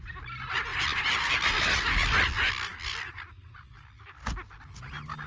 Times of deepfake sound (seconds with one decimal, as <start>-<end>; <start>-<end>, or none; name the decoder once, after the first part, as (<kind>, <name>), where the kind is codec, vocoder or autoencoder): none